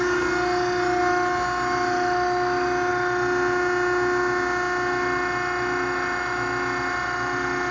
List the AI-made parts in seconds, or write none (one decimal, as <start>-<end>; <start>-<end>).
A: none